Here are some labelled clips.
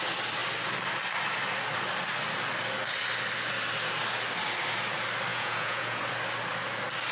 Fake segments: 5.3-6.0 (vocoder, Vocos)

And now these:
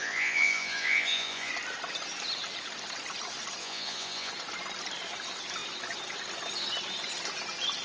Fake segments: 0.0-1.5 (vocoder, Vocos); 3.6-4.3

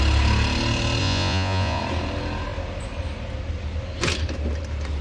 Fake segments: 1.0-1.8 (vocoder, Vocos)